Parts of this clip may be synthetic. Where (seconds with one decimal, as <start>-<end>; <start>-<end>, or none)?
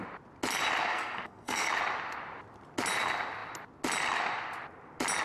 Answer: 0.9-1.7